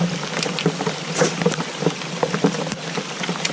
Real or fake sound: real